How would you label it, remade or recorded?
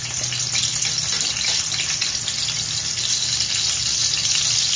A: recorded